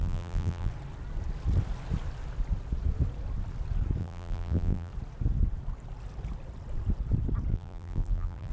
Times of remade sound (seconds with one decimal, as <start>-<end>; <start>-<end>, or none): 0.0-0.7; 4.0-4.9; 7.5-8.5